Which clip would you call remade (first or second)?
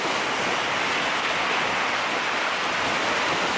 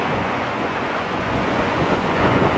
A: second